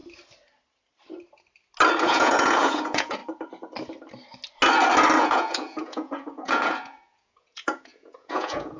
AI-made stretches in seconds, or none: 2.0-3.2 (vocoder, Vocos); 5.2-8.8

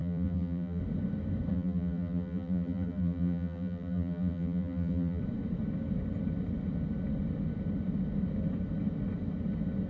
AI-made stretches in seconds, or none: 0.0-0.8 (vocoder, BigVGAN v2); 1.5-5.2

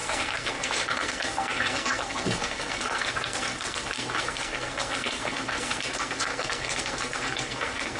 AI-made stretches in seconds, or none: 0.0-8.0 (codec, SNAC)